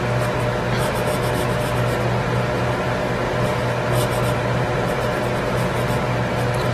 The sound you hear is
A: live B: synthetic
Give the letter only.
A